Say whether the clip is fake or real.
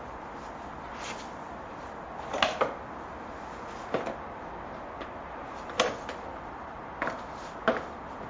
real